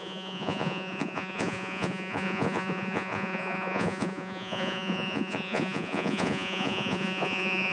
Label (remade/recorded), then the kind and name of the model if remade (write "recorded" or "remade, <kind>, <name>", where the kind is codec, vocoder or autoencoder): remade, vocoder, Vocos